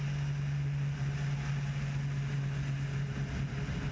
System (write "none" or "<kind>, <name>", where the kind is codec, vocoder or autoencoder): none